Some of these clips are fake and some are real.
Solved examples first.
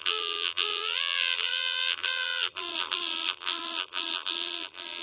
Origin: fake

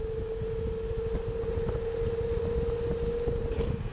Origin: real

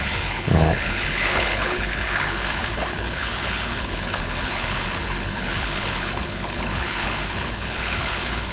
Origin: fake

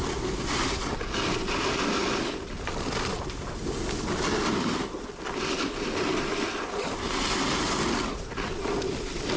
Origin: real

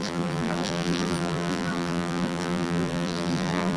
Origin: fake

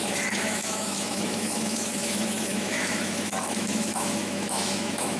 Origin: fake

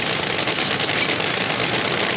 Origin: real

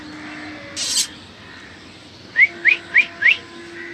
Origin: real